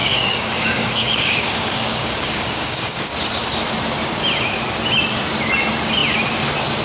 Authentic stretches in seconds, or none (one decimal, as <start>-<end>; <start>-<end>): 3.1-6.8